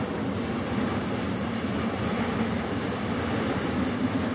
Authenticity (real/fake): real